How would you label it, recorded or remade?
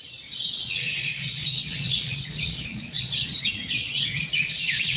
remade